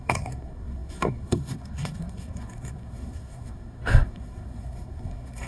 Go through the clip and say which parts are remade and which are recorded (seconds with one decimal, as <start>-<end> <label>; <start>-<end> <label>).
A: 0.0-5.5 remade